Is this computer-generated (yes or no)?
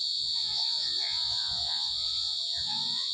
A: yes